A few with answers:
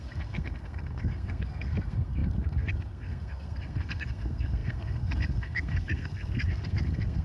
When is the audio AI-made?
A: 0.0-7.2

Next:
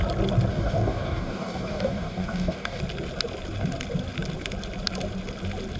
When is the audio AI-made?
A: 0.5-2.8